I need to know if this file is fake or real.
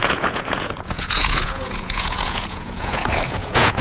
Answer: fake